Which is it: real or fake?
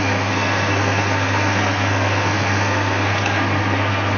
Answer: fake